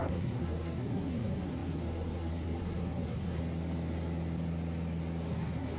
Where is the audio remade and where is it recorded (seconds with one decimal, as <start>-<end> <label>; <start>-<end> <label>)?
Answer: 0.0-3.4 remade; 3.4-5.3 recorded; 5.3-5.8 remade